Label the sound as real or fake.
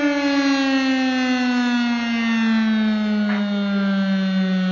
real